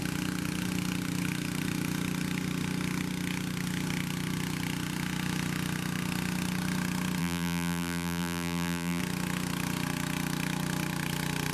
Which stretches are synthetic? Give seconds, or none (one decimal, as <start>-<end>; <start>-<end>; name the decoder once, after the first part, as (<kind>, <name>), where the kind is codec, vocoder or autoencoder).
7.2-9.0 (vocoder, BigVGAN v2)